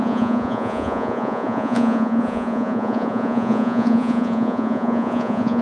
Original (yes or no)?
no